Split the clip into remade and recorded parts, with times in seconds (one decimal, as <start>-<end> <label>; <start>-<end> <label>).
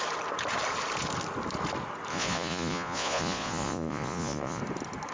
0.0-2.1 recorded; 2.1-4.6 remade; 4.6-5.1 recorded